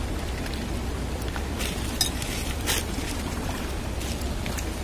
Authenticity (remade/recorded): recorded